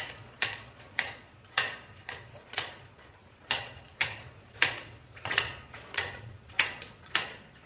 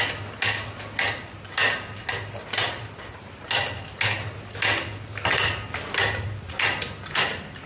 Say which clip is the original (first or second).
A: second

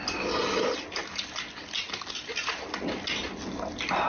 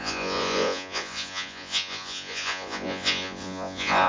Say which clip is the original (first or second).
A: first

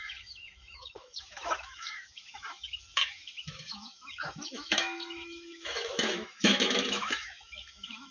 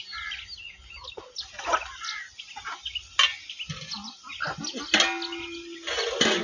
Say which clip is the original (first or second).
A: second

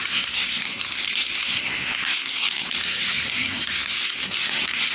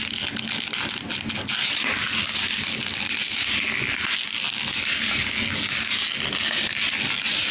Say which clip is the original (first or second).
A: second